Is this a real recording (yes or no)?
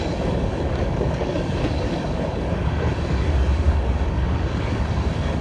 no